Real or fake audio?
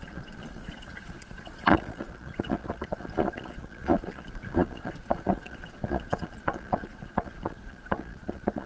fake